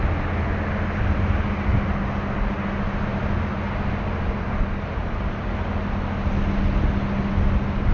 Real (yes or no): yes